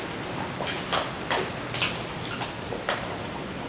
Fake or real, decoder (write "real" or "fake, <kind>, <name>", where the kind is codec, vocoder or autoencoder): real